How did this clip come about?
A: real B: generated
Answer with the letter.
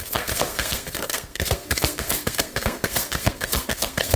B